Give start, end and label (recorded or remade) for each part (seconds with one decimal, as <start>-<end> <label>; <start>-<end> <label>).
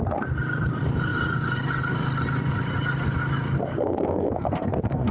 0.0-3.7 recorded; 3.7-5.1 remade